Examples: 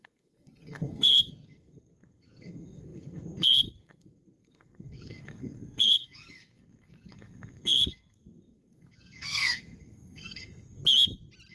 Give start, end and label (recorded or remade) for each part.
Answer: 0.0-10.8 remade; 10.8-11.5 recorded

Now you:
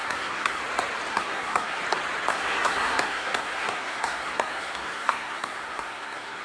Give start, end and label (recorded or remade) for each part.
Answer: 0.0-0.6 remade; 0.6-1.1 recorded; 1.1-1.8 remade; 1.8-2.3 recorded; 2.3-6.4 remade

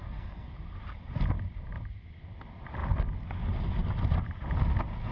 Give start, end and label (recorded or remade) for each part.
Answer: 0.0-0.5 remade; 0.5-5.1 recorded

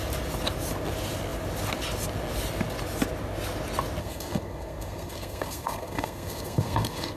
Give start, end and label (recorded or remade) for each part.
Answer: 0.0-4.0 recorded; 4.0-7.2 remade

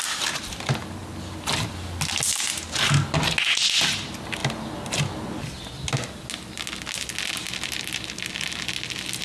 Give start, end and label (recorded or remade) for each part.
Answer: 0.0-9.2 recorded

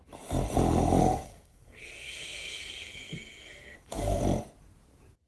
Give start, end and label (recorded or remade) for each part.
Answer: 0.0-1.0 recorded; 1.0-4.2 remade; 4.2-5.3 recorded

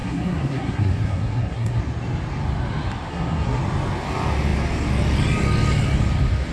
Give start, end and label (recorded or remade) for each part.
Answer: 0.0-1.8 remade; 1.8-3.1 recorded; 3.1-3.6 remade; 3.6-6.5 recorded

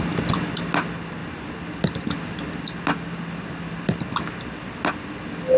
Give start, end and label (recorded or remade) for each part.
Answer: 0.0-5.6 recorded